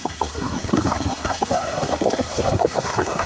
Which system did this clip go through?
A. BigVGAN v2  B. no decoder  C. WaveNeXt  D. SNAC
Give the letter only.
D